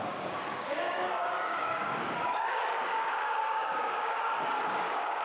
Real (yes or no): no